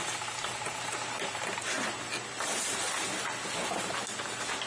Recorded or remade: recorded